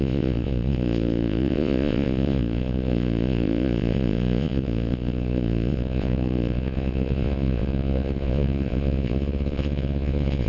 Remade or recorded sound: remade